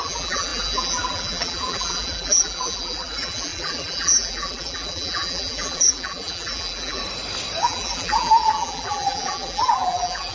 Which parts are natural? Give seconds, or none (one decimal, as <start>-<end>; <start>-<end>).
7.0-7.6